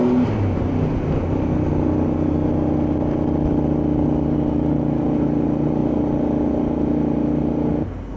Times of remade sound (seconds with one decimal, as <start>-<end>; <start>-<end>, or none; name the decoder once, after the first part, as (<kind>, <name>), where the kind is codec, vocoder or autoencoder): none